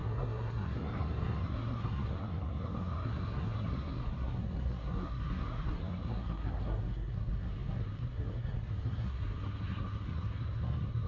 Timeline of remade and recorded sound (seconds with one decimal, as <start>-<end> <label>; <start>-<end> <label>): 0.0-11.1 remade